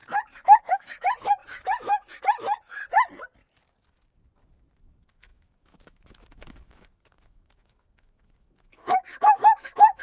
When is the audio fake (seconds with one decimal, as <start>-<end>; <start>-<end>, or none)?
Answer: 0.6-2.8; 4.8-10.0